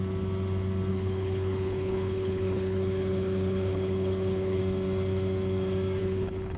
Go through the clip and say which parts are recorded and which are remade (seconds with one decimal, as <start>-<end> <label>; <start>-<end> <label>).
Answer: 0.0-0.9 recorded; 0.9-4.6 remade; 4.6-6.0 recorded; 6.0-6.6 remade